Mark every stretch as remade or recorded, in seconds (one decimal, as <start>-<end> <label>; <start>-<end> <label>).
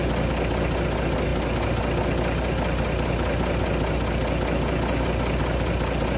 0.0-6.2 recorded